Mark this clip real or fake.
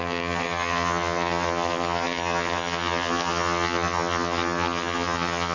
fake